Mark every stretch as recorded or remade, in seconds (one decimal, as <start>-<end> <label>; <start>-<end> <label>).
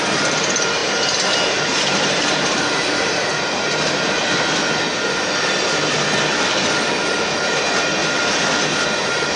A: 0.0-3.3 remade; 3.3-7.5 recorded; 7.5-8.0 remade; 8.0-9.0 recorded; 9.0-9.4 remade